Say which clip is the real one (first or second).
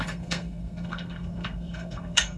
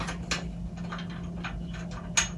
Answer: second